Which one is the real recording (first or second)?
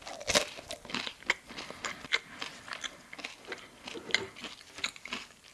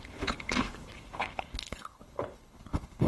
first